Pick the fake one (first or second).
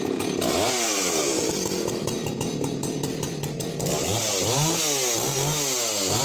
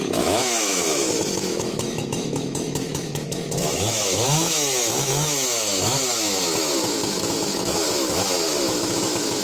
second